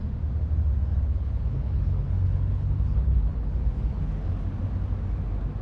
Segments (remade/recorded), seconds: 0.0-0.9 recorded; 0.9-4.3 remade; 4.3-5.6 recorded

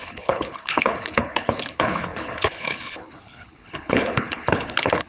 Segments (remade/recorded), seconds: 0.0-5.1 remade

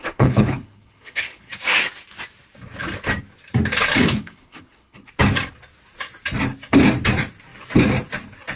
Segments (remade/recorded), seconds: 0.0-1.5 remade; 1.5-4.0 recorded; 4.0-5.1 remade; 5.1-8.6 recorded

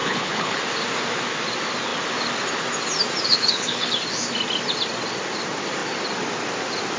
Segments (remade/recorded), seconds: 0.0-0.6 remade; 0.6-3.3 recorded; 3.3-3.9 remade; 3.9-7.0 recorded

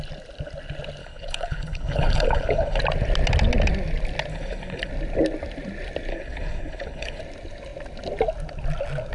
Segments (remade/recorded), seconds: 0.0-1.0 recorded; 1.0-2.8 remade; 2.8-4.3 recorded; 4.3-4.9 remade; 4.9-6.1 recorded; 6.1-7.2 remade; 7.2-9.1 recorded

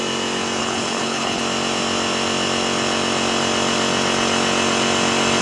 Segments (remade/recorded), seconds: 0.0-0.6 recorded; 0.6-1.4 remade; 1.4-5.4 recorded

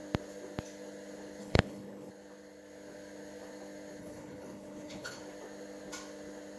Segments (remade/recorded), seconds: 0.0-1.4 recorded; 1.4-2.1 remade; 2.1-4.0 recorded; 4.0-5.2 remade; 5.2-6.6 recorded

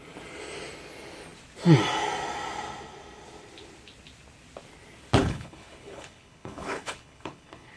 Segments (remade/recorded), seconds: 0.0-5.2 recorded; 5.2-7.8 remade